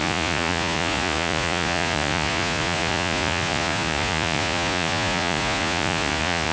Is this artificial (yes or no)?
yes